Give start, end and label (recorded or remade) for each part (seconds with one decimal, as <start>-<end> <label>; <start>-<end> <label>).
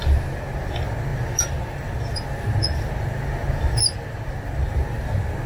0.0-5.5 recorded